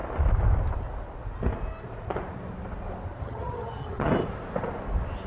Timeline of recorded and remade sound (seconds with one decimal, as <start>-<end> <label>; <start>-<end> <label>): 0.0-3.2 recorded; 3.2-4.1 remade; 4.1-5.3 recorded